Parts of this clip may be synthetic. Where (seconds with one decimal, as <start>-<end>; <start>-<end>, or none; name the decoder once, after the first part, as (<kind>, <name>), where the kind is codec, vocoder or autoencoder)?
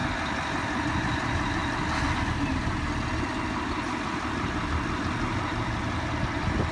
none